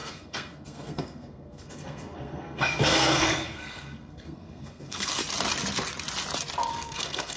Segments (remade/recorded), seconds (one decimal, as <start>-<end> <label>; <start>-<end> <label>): 0.0-5.2 remade; 5.2-6.7 recorded; 6.7-7.4 remade